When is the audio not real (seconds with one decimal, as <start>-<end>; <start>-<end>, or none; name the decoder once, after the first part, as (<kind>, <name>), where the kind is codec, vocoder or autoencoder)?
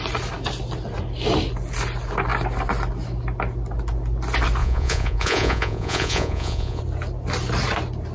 4.6-6.8 (vocoder, Vocos)